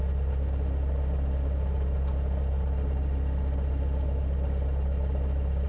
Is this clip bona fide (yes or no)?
yes